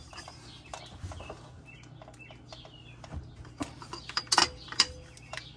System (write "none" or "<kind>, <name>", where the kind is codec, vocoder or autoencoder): none